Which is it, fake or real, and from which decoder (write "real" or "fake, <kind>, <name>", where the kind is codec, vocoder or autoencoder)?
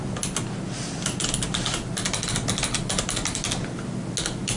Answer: real